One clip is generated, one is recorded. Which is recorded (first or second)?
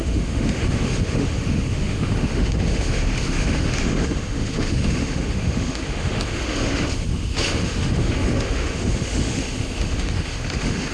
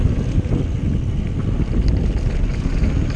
second